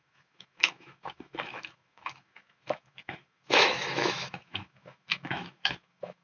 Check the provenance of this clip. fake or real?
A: fake